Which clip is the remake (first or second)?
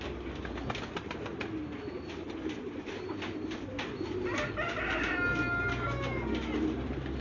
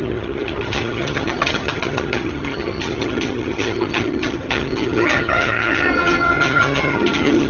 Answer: second